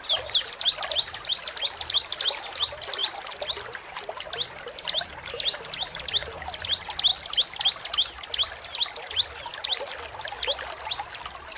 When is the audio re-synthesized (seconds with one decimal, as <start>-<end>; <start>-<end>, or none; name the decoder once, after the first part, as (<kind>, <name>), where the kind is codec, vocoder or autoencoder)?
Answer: none